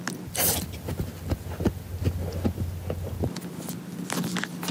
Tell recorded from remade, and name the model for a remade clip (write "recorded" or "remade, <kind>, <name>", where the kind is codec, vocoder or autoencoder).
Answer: recorded